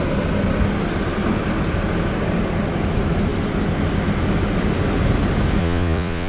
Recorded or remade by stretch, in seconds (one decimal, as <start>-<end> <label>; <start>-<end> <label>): 0.0-5.6 recorded; 5.6-6.3 remade